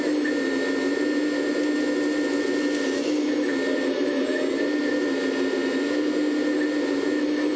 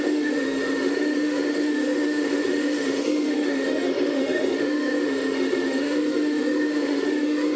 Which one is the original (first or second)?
first